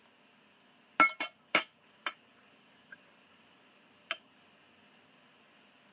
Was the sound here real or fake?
real